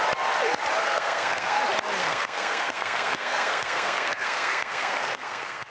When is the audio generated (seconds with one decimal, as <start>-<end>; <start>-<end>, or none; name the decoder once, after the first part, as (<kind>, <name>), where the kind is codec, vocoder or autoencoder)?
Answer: 0.8-1.6 (codec, SNAC); 2.0-5.7